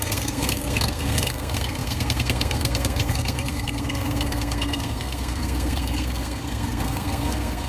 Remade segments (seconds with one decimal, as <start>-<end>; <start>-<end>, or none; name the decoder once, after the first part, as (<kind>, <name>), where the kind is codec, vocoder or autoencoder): 0.0-7.7 (codec, SNAC)